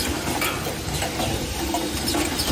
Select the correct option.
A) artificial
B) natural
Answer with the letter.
B